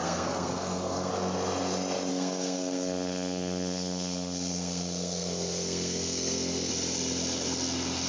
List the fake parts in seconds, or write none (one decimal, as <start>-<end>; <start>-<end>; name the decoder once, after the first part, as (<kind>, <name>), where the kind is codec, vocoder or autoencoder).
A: 0.0-1.1 (codec, SNAC); 2.1-6.7